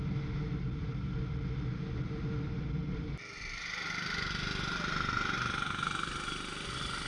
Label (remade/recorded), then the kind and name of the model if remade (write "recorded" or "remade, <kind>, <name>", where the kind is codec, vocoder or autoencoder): recorded